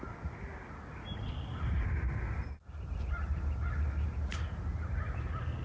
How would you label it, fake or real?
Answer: real